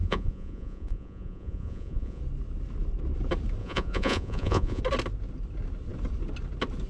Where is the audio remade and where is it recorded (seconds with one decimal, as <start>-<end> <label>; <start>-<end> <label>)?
0.0-2.2 remade; 2.2-3.6 recorded; 3.6-4.8 remade; 4.8-6.9 recorded